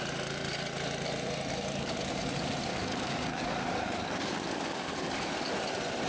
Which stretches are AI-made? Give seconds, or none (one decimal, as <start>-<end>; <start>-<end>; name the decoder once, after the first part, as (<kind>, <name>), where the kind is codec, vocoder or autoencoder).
1.5-2.1 (codec, DAC); 2.7-5.3